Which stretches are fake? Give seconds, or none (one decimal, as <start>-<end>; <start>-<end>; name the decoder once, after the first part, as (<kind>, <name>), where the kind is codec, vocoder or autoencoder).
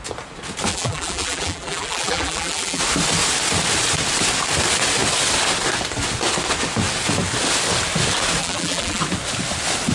0.7-2.8 (vocoder, BigVGAN v2); 8.4-9.0